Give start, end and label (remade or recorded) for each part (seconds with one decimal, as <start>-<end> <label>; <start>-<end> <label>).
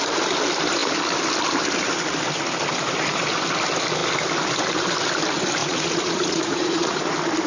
0.0-5.6 recorded; 5.6-7.0 remade; 7.0-7.5 recorded